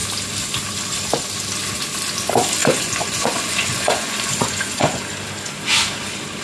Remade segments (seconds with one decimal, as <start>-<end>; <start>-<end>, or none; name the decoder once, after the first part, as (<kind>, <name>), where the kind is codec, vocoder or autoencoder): 2.6-5.0 (vocoder, Vocos)